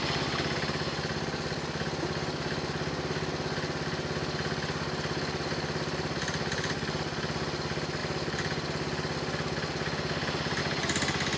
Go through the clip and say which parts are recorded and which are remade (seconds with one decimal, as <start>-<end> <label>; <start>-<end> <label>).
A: 0.0-11.4 recorded

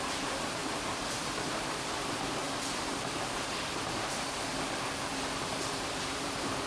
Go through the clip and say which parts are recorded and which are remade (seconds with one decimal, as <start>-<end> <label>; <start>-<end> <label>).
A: 0.0-4.5 remade; 4.5-5.1 recorded; 5.1-6.7 remade

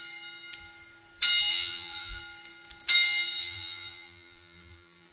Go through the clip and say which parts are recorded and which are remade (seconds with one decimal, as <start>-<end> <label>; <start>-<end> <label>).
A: 0.0-1.5 recorded; 1.5-2.2 remade; 2.2-3.4 recorded; 3.4-5.1 remade

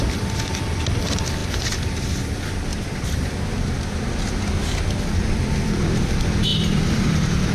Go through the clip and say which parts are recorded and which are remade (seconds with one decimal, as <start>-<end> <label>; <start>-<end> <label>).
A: 0.0-1.4 recorded; 1.4-2.3 remade; 2.3-2.7 recorded; 2.7-3.3 remade; 3.3-6.5 recorded; 6.5-7.5 remade

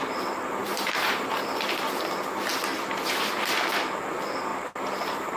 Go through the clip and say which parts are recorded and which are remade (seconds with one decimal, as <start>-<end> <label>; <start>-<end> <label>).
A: 0.0-0.6 recorded; 0.6-1.8 remade; 1.8-4.5 recorded; 4.5-5.4 remade